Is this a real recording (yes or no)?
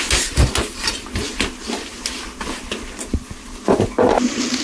yes